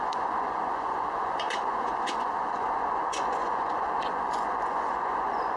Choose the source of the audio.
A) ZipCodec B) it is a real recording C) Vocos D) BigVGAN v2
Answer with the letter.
C